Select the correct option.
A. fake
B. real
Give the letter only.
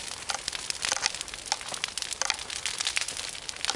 B